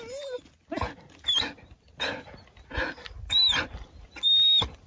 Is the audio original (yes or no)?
yes